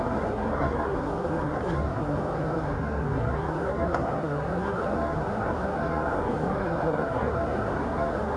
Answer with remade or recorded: remade